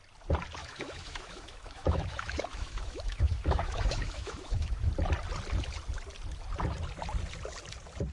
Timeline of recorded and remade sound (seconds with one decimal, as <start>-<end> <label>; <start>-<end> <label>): 0.0-0.6 recorded; 0.6-4.9 remade; 4.9-8.1 recorded